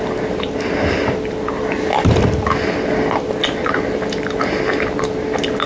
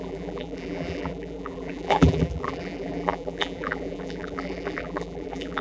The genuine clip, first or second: first